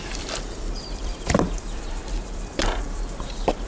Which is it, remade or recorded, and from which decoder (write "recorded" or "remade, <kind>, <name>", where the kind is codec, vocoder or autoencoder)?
remade, vocoder, BigVGAN v2